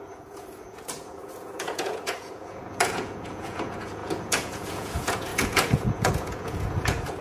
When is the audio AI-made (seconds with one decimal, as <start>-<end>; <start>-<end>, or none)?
0.0-7.2